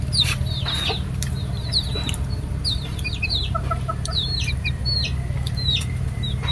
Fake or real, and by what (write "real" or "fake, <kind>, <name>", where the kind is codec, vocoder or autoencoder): fake, vocoder, BigVGAN v2